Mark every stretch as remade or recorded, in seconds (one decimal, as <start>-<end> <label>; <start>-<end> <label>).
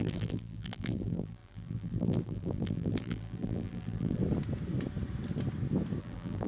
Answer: 0.0-4.2 remade; 4.2-6.0 recorded; 6.0-6.5 remade